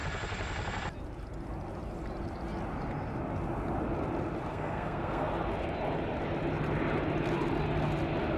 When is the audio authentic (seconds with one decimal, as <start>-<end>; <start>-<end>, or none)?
0.0-4.5; 5.3-8.4